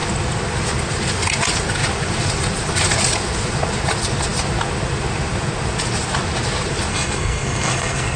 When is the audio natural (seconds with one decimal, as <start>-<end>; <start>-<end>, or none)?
0.0-6.9